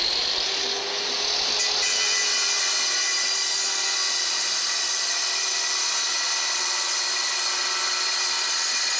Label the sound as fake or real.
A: real